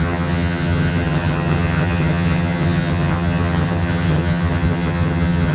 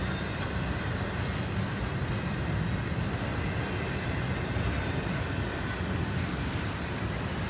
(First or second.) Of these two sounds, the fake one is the first